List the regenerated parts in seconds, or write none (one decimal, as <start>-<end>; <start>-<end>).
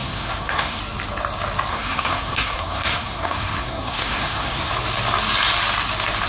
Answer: 0.0-0.8; 1.7-4.7